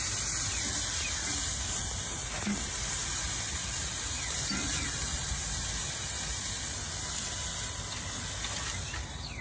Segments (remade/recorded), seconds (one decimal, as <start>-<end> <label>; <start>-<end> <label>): 0.0-9.4 recorded